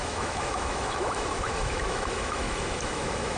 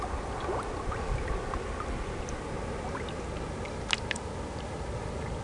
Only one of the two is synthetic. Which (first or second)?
first